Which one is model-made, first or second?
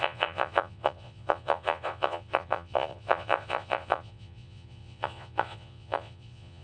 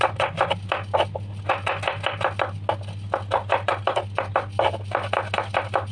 first